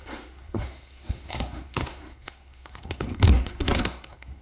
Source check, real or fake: fake